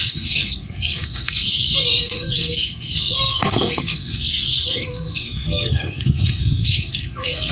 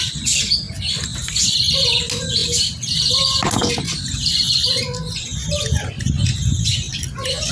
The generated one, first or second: first